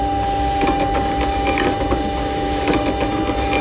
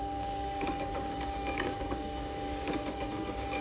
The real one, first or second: first